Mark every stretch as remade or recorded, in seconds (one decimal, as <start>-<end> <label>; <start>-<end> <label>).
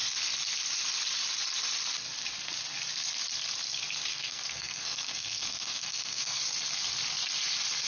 0.0-4.1 recorded; 4.1-6.4 remade; 6.4-7.9 recorded